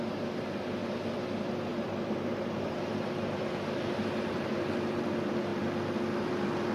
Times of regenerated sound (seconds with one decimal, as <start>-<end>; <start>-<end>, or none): 1.7-4.7